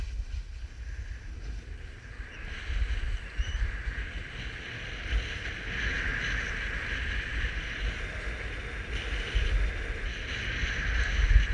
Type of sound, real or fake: real